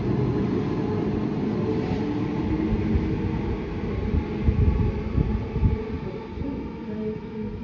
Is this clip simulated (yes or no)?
no